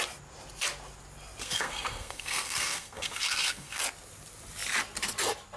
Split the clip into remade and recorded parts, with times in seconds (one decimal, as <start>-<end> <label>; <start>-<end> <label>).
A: 0.0-1.4 recorded; 1.4-3.8 remade; 3.8-5.6 recorded

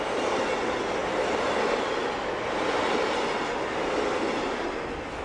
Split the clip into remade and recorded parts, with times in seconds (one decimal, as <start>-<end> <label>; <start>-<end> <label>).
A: 0.0-5.2 recorded

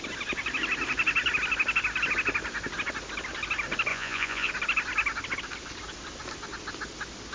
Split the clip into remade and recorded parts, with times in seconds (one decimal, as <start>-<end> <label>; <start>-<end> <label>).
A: 0.0-3.9 recorded; 3.9-4.5 remade; 4.5-7.3 recorded

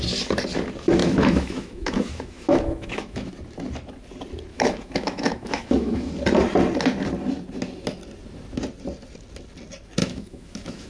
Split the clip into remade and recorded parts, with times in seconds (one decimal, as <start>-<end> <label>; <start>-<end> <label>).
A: 0.0-1.0 recorded; 1.0-3.3 remade; 3.3-4.5 recorded; 4.5-6.1 remade; 6.1-10.0 recorded; 10.0-10.9 remade